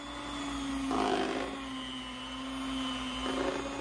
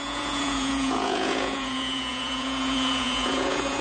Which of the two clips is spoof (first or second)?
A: second